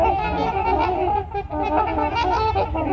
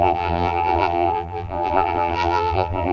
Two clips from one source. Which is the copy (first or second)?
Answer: second